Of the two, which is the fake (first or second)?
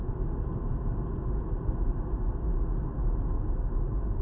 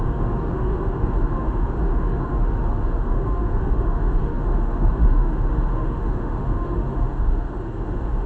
second